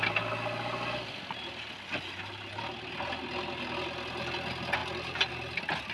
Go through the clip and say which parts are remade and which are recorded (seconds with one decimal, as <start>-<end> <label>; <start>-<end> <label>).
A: 0.0-4.8 recorded; 4.8-5.3 remade; 5.3-5.9 recorded